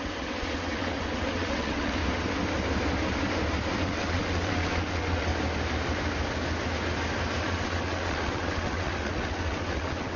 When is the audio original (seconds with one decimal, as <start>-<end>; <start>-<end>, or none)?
2.0-3.8; 5.3-7.4